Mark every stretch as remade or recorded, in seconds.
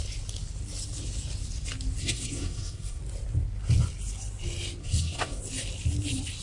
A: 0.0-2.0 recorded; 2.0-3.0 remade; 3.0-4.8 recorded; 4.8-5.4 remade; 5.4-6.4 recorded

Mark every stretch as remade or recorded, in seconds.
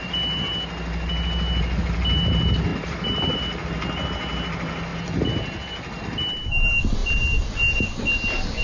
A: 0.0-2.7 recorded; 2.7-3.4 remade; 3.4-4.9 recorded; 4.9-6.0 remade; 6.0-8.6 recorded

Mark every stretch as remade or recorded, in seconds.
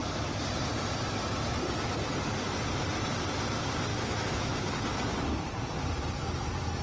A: 0.0-3.9 recorded; 3.9-4.7 remade; 4.7-6.8 recorded